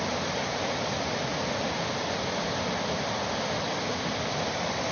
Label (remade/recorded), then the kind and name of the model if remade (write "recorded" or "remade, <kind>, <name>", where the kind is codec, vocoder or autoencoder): recorded